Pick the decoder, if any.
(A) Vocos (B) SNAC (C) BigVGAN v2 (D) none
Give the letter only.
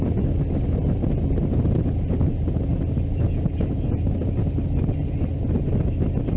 D